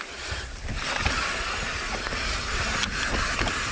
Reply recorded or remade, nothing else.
recorded